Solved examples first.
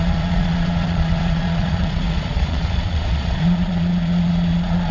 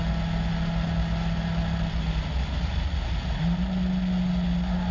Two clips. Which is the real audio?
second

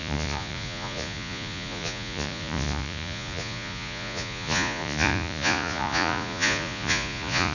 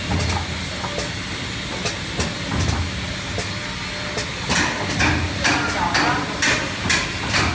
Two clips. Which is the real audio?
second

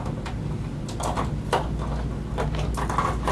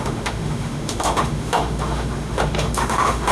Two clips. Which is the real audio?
first